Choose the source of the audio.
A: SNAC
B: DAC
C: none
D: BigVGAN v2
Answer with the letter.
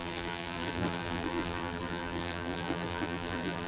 D